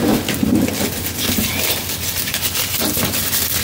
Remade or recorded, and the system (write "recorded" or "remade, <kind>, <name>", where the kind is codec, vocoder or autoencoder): recorded